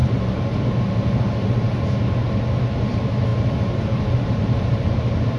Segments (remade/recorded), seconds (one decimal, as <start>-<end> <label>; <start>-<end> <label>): 0.0-2.2 remade; 2.2-2.9 recorded; 2.9-5.4 remade